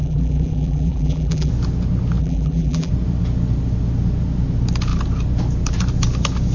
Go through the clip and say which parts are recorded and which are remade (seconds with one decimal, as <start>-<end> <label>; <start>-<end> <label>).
0.0-1.5 remade; 1.5-2.2 recorded; 2.2-2.9 remade; 2.9-6.5 recorded